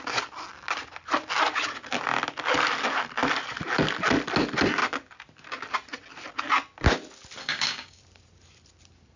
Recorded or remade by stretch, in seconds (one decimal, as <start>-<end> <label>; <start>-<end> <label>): 0.0-7.4 recorded; 7.4-8.0 remade; 8.0-9.2 recorded